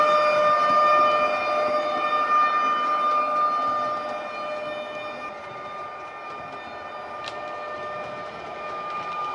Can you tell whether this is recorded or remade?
recorded